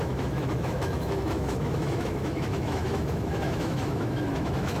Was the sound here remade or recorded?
remade